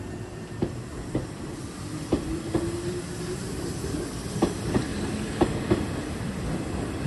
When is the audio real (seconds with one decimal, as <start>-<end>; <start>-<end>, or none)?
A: 4.9-6.4